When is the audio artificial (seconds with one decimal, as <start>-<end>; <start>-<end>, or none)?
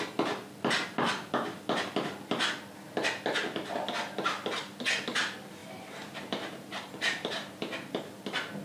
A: 5.6-8.0